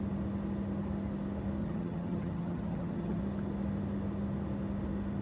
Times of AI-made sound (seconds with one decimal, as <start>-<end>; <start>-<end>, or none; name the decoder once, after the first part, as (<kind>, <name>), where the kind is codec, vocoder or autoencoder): 1.6-3.2 (vocoder, HiFi-GAN)